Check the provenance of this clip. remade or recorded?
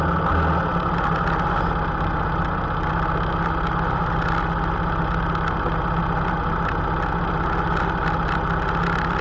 recorded